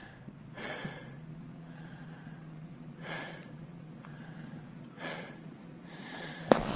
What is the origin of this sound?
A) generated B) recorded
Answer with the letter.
A